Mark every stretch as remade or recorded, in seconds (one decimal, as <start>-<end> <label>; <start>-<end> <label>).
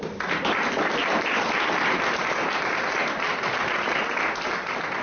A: 0.0-5.0 recorded